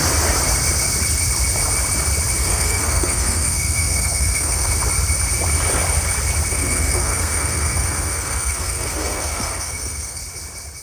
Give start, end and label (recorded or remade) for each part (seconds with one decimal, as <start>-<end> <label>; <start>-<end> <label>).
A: 0.0-2.4 recorded; 2.4-4.7 remade; 4.7-6.5 recorded; 6.5-10.2 remade; 10.2-10.8 recorded

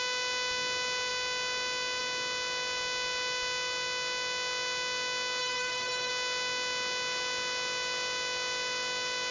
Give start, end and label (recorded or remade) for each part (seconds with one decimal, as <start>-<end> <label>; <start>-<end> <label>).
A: 0.0-5.4 recorded; 5.4-6.1 remade; 6.1-9.3 recorded

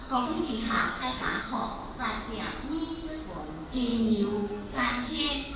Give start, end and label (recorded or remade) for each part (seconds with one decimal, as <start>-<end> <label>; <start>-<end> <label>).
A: 0.0-1.8 remade; 1.8-3.4 recorded; 3.4-5.6 remade

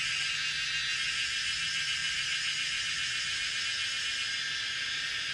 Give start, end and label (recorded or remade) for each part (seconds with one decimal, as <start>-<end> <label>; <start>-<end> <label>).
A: 0.0-5.3 recorded

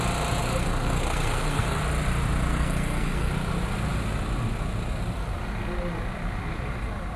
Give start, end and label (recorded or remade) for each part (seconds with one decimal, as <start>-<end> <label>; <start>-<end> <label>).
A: 0.0-0.4 recorded; 0.4-1.8 remade; 1.8-2.5 recorded; 2.5-3.3 remade; 3.3-7.2 recorded

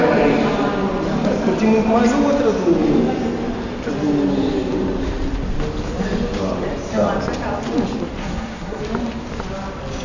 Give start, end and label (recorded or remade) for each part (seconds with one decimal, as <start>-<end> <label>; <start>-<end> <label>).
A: 0.0-8.2 recorded; 8.2-8.8 remade; 8.8-10.0 recorded

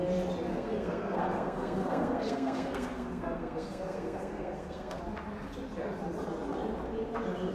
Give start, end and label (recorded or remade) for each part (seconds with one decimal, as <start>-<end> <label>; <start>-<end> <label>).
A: 0.0-0.5 recorded; 0.5-5.0 remade; 5.0-7.5 recorded